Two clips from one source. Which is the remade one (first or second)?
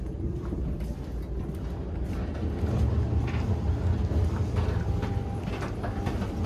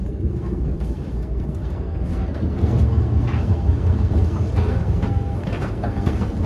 second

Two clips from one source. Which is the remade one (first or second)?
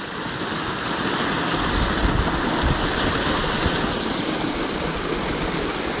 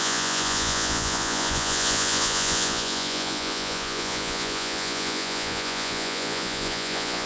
second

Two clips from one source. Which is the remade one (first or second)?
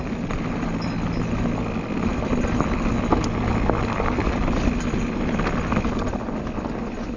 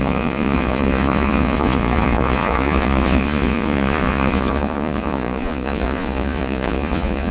second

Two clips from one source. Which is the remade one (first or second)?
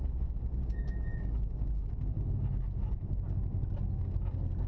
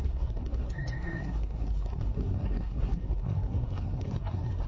second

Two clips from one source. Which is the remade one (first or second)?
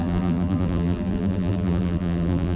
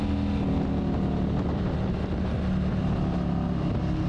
first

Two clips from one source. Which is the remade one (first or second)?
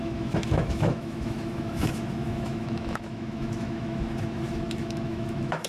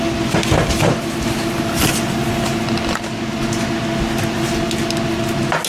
first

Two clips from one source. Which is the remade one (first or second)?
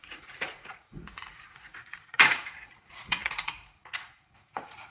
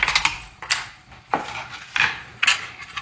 first